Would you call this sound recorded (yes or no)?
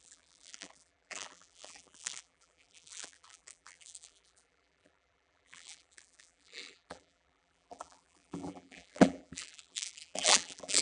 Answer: no